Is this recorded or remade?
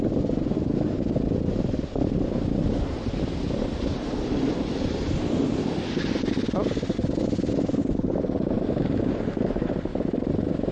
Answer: recorded